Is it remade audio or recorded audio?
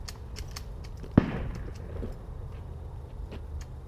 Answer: recorded